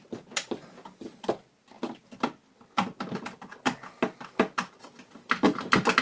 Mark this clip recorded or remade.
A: recorded